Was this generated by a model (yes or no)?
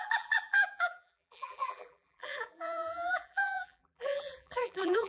yes